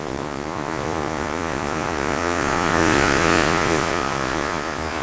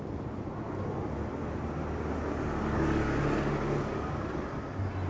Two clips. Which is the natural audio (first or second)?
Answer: second